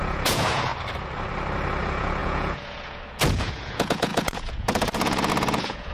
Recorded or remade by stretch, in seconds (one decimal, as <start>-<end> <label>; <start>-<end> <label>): 0.0-0.7 remade; 0.7-1.8 recorded; 1.8-5.9 remade

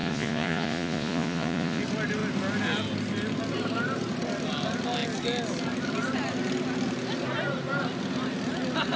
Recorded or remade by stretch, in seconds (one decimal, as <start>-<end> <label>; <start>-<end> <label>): 0.0-1.8 remade; 1.8-9.0 recorded

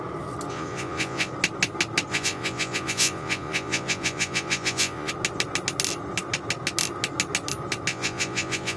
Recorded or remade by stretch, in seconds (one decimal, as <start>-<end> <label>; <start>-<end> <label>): 0.0-0.5 recorded; 0.5-1.3 remade; 1.3-2.1 recorded; 2.1-5.1 remade; 5.1-7.9 recorded; 7.9-8.8 remade

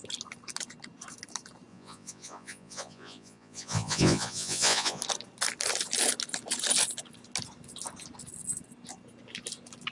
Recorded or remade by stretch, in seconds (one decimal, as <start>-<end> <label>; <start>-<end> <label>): 0.0-1.7 recorded; 1.7-5.0 remade; 5.0-9.9 recorded

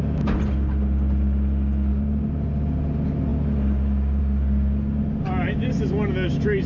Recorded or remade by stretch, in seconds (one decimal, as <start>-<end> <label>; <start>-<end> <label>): 0.0-6.7 recorded

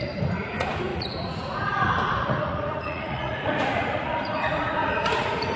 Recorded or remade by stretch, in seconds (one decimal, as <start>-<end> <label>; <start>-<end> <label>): 0.0-5.6 remade

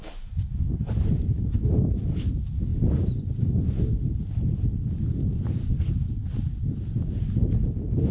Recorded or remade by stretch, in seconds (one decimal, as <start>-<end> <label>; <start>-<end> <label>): 0.0-8.1 recorded

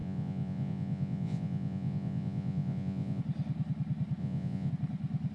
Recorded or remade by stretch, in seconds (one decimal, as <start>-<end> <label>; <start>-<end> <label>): 0.0-3.2 remade; 3.2-4.2 recorded; 4.2-4.7 remade; 4.7-5.3 recorded